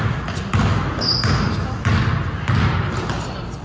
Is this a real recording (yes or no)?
yes